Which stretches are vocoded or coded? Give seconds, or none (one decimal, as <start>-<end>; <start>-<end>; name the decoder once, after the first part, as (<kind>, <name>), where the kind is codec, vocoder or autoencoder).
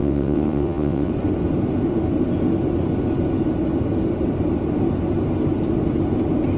0.0-1.1 (vocoder, WaveNeXt)